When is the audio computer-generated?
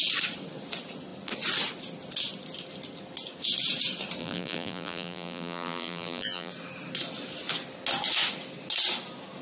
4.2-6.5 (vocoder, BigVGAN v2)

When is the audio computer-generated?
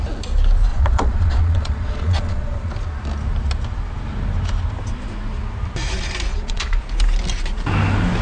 0.7-2.7 (vocoder, Vocos); 6.3-6.8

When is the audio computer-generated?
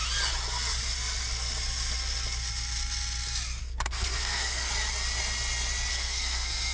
3.6-4.7 (codec, SNAC); 5.9-6.7